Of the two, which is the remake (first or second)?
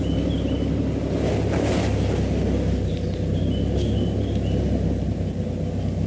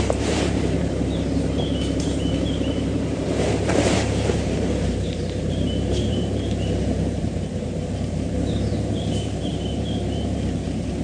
second